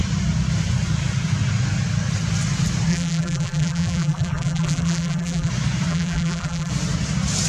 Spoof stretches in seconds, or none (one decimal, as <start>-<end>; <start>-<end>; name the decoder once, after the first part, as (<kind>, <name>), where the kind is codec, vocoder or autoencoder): 2.9-5.5 (vocoder, BigVGAN v2); 5.9-6.7